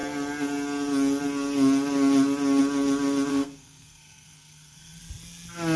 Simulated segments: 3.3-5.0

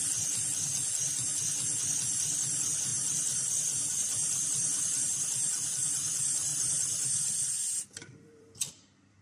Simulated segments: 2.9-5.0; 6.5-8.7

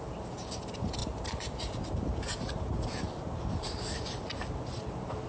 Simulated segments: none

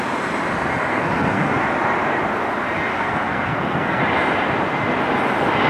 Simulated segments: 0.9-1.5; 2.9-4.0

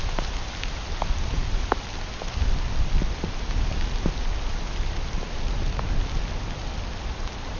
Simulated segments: none